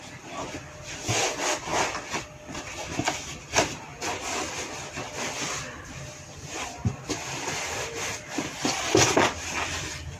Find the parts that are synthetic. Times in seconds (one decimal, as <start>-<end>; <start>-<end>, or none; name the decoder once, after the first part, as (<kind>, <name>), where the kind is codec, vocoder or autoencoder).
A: none